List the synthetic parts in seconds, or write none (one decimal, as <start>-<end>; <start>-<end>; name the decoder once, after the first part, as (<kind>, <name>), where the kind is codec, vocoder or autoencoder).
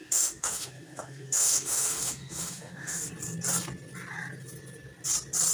0.0-3.1 (autoencoder, DAC-VAE)